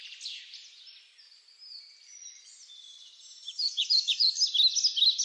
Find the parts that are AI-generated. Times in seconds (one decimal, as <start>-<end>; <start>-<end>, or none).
3.0-4.3